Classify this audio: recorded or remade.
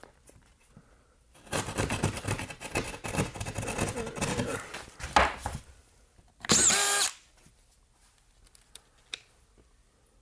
recorded